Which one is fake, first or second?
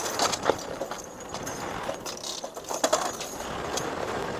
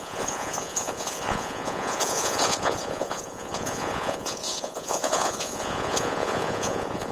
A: second